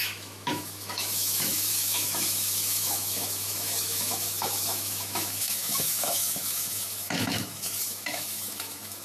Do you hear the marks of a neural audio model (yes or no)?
yes